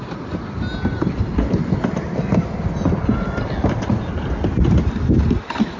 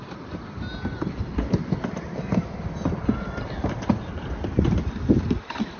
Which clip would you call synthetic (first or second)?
second